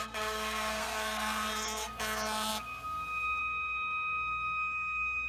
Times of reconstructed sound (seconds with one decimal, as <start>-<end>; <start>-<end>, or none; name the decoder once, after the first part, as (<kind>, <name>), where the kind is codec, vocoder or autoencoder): 0.0-5.3 (codec, SNAC)